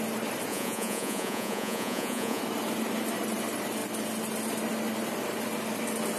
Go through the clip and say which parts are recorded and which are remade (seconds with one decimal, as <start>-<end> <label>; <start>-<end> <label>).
0.0-0.5 recorded; 0.5-2.4 remade; 2.4-6.2 recorded